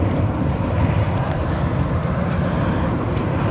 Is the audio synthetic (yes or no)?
yes